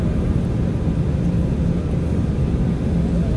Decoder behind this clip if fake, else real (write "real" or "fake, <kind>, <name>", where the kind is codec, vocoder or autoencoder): real